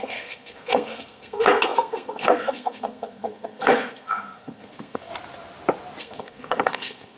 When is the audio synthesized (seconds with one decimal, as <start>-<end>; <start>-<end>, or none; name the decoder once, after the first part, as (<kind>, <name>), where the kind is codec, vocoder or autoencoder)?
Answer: 0.0-5.1 (codec, SNAC); 6.0-7.2